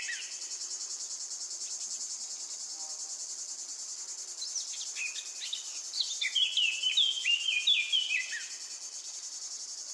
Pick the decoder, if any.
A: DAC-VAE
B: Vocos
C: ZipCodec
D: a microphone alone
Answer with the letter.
D